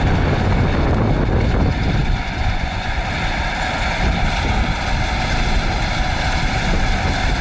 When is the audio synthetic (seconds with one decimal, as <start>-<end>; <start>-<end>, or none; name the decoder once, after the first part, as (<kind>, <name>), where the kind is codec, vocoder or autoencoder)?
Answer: 2.0-3.0 (vocoder, Vocos)